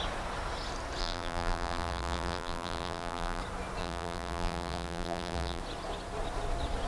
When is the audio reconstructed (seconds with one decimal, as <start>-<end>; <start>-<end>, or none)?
1.0-3.4; 3.8-5.6